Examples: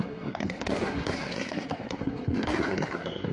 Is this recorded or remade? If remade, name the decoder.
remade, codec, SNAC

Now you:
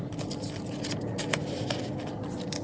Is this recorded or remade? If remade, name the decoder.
recorded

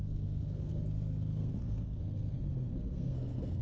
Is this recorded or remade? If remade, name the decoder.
remade, codec, SNAC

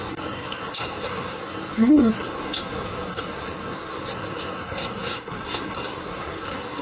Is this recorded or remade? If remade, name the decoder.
remade, codec, SNAC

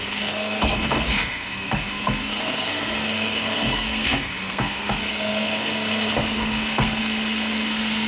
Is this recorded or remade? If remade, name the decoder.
remade, codec, SNAC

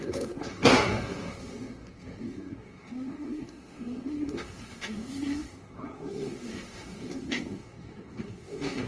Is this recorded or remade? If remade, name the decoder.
remade, codec, SNAC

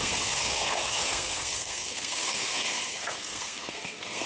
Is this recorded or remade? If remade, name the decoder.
remade, codec, SNAC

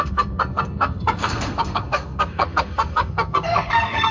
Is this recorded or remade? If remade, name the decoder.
remade, codec, SNAC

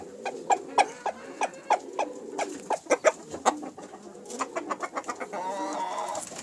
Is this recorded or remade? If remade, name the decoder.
recorded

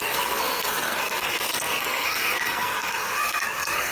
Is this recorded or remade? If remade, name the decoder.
remade, codec, SNAC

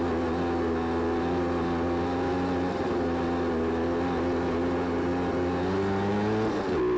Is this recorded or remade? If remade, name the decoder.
recorded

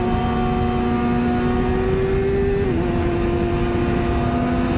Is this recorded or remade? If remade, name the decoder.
recorded